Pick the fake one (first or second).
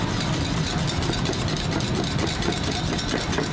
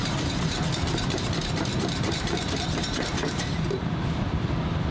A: second